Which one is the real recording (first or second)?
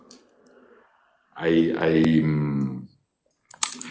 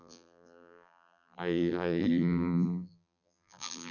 first